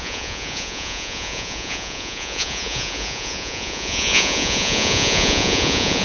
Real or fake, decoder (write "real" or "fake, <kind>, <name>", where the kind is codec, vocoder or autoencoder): fake, vocoder, Vocos